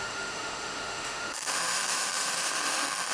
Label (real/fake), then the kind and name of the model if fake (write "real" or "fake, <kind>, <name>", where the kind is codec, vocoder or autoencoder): fake, autoencoder, DAC-VAE